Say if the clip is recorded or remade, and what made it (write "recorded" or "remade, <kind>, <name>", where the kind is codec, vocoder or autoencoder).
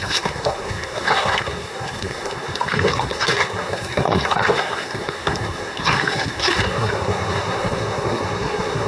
remade, codec, SNAC